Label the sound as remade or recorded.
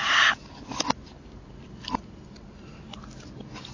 recorded